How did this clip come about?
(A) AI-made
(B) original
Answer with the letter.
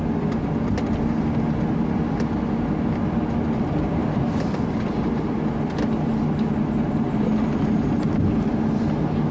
B